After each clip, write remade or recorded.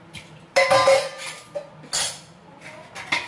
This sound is recorded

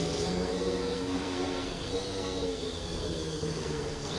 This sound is remade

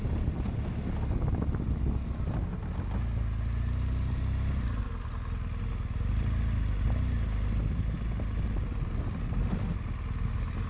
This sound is recorded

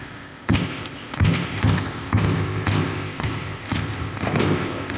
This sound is remade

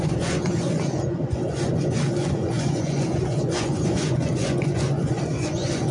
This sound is remade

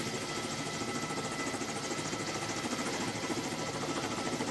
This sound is recorded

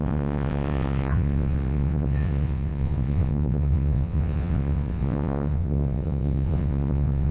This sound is remade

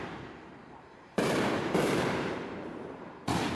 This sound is remade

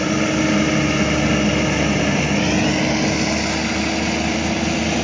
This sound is recorded